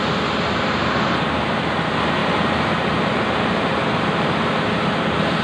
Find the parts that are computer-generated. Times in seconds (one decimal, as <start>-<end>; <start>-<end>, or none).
0.0-5.4